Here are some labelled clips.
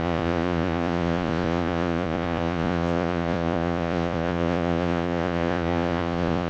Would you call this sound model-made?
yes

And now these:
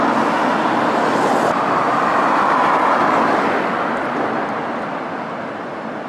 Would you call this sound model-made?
no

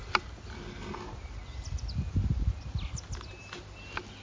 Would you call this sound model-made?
no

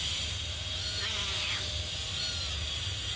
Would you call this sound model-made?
no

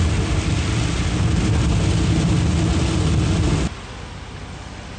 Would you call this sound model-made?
no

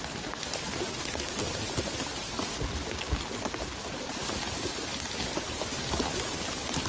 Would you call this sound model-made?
no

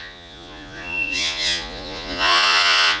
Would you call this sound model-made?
yes